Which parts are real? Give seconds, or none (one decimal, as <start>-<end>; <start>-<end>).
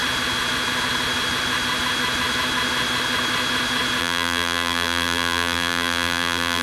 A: 0.0-4.0